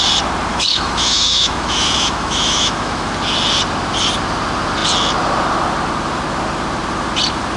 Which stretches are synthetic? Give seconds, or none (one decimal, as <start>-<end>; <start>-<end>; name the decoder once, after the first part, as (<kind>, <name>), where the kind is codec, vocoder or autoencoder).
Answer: 0.5-3.1 (autoencoder, DAC-VAE)